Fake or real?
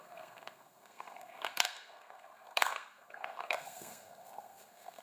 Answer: fake